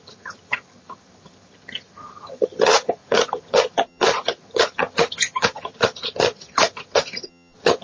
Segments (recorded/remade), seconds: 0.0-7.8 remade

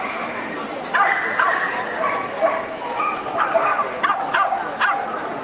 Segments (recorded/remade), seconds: 0.0-5.4 recorded

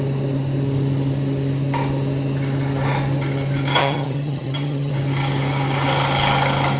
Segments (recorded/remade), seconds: 0.0-3.8 recorded; 3.8-4.9 remade; 4.9-6.8 recorded